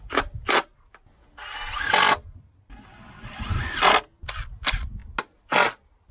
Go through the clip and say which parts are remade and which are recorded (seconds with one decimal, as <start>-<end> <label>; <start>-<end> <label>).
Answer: 0.0-6.1 recorded